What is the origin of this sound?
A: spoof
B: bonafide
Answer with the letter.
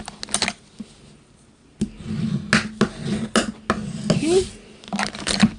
B